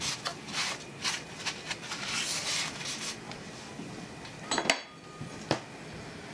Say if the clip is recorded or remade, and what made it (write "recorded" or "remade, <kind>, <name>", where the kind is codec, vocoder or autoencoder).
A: recorded